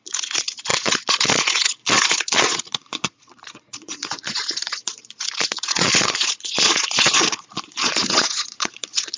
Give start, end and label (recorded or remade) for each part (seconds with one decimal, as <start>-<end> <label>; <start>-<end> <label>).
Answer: 0.0-9.2 remade